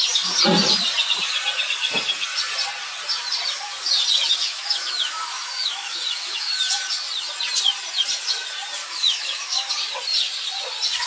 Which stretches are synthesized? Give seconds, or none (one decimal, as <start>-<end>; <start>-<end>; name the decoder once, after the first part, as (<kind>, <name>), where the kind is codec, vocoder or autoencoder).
4.4-6.6 (autoencoder, DAC-VAE); 8.8-9.7